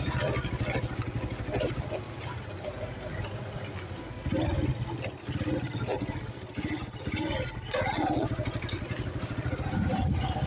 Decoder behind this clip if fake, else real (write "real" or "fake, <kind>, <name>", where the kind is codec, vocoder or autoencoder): real